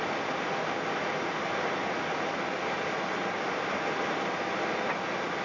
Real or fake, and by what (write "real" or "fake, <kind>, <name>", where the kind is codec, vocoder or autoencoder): real